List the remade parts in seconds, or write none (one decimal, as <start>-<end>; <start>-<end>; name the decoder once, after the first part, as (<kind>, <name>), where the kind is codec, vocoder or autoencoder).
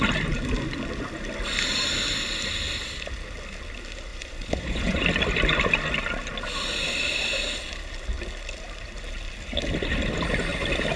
4.1-5.0 (vocoder, Vocos)